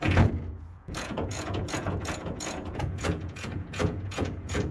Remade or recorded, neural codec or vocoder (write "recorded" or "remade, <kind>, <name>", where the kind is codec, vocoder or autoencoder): remade, vocoder, Vocos